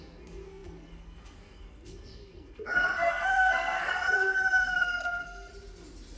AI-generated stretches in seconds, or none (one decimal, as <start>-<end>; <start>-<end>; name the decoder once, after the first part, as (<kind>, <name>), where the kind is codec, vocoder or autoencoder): 0.0-5.5 (codec, SNAC)